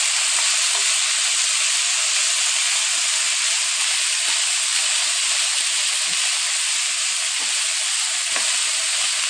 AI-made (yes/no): no